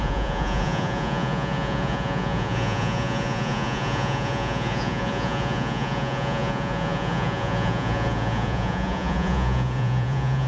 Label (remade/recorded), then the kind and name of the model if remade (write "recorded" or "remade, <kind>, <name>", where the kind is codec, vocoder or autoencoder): remade, vocoder, Vocos